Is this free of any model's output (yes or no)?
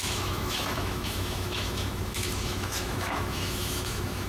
no